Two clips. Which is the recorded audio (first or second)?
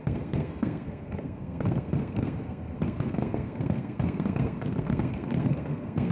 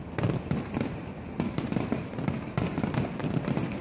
second